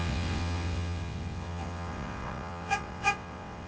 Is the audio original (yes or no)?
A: no